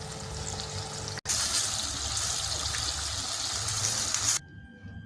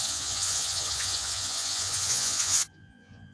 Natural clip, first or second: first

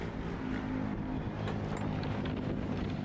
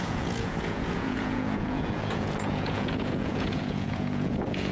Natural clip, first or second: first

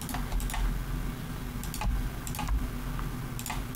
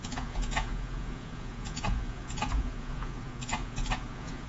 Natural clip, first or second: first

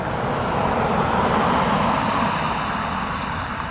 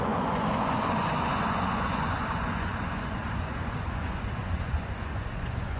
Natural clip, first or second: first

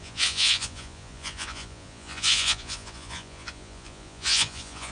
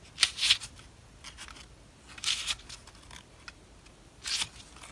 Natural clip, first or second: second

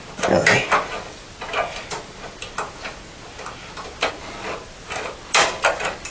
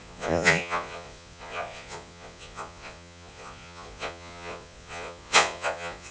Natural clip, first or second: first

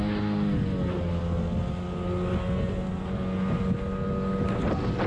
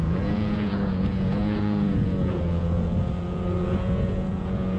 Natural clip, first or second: first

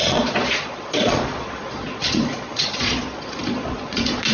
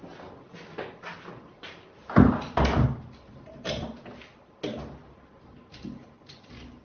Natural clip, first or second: second